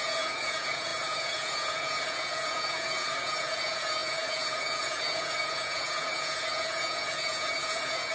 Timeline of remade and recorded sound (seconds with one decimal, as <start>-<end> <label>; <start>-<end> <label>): 0.0-8.1 remade